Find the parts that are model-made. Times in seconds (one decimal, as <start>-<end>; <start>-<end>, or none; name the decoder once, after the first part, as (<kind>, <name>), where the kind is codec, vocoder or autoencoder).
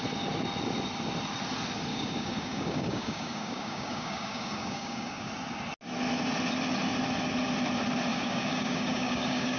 1.9-5.3 (codec, DAC); 8.1-9.6